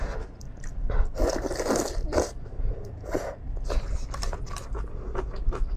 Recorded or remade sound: recorded